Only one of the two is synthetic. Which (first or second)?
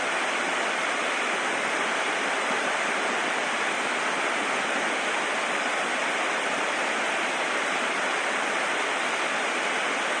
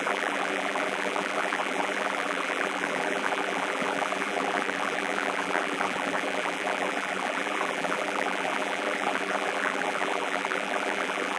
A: second